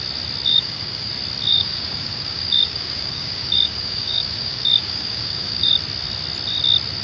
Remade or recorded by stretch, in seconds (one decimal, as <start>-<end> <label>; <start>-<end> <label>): 0.0-0.5 recorded; 0.5-1.1 remade; 1.1-1.5 recorded; 1.5-5.7 remade; 5.7-7.0 recorded